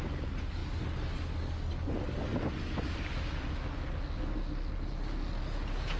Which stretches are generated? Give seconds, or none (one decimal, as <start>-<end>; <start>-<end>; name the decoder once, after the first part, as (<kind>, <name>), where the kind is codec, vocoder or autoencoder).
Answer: none